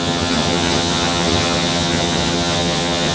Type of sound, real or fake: fake